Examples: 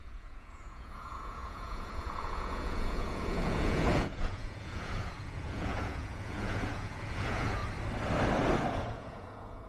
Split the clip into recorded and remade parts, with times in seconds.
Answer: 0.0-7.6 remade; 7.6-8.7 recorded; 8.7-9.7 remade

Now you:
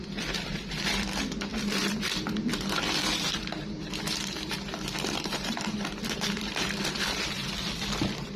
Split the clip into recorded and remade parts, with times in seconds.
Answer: 0.0-8.4 remade

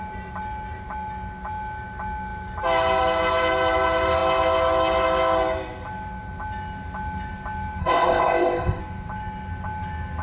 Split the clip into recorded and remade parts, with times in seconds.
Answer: 0.0-7.8 recorded; 7.8-8.8 remade; 8.8-10.2 recorded

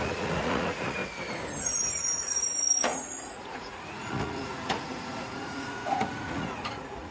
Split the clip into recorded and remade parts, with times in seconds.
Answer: 0.0-1.0 remade; 1.0-1.6 recorded; 1.6-7.1 remade

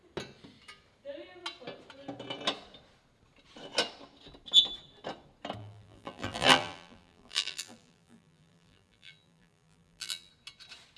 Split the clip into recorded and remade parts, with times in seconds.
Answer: 0.0-5.6 recorded; 5.6-10.3 remade; 10.3-11.0 recorded